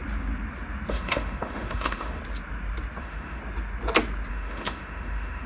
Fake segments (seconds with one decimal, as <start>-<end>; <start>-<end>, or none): 0.9-2.2; 3.0-3.4; 4.3-5.5

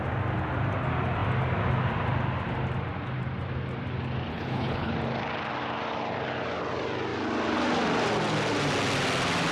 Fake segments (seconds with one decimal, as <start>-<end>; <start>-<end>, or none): 4.3-4.9

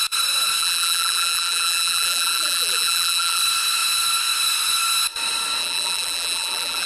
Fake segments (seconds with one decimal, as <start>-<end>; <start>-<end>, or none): 0.6-3.4; 5.6-6.9

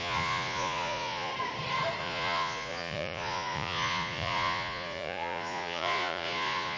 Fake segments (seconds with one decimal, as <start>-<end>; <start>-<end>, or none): 0.0-1.3; 2.0-6.8